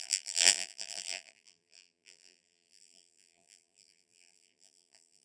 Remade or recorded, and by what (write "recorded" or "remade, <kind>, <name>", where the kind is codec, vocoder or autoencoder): remade, vocoder, BigVGAN v2